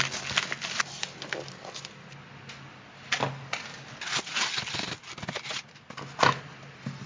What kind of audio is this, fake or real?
real